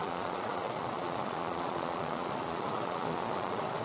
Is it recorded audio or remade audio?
remade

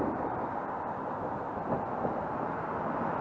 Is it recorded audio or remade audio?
recorded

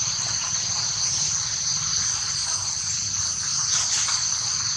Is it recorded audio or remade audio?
recorded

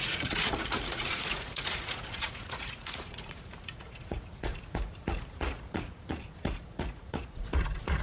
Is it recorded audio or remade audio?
remade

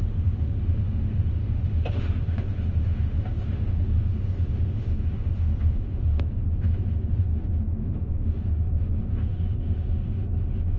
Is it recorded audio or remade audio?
remade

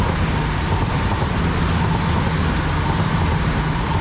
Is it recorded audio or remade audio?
recorded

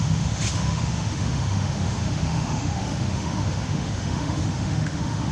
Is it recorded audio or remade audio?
remade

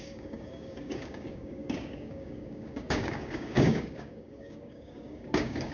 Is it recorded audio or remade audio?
remade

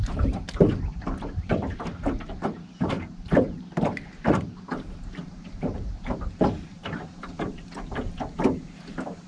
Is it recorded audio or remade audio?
remade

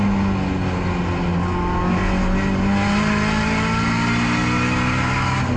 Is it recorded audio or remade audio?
recorded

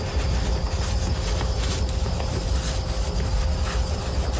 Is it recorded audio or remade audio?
recorded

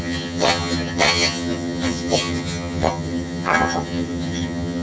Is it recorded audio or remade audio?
remade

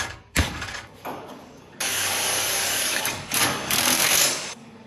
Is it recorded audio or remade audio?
remade